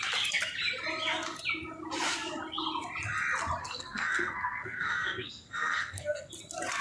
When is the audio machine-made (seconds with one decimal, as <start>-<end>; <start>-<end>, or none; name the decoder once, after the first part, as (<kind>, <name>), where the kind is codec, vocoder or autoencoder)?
3.6-6.3 (codec, SNAC)